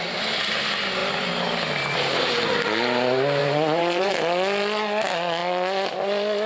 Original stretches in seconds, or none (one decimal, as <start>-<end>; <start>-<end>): 0.0-3.4; 4.1-6.5